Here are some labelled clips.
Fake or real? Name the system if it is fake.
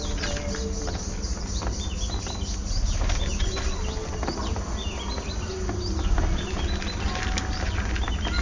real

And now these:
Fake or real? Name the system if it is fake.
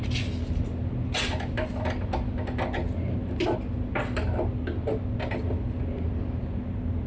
real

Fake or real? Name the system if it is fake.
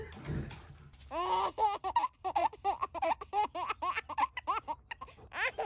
real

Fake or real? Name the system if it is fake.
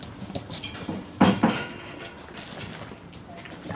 fake, vocoder, BigVGAN v2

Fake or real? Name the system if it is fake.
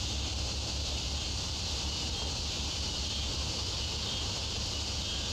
fake, vocoder, BigVGAN v2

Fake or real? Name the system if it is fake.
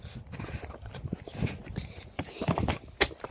real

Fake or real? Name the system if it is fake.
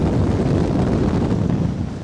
real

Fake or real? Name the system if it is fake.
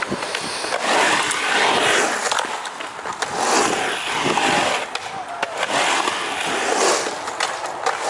real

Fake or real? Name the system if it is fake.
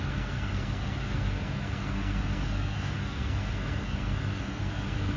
fake, codec, SNAC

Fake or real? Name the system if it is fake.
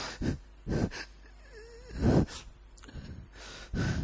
real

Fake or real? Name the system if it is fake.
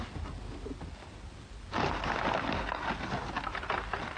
real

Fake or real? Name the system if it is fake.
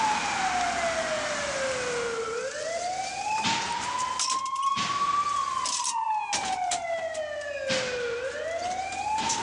real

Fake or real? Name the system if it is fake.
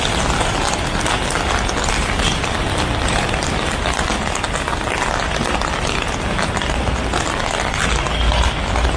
real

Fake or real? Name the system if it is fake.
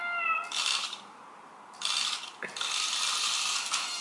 real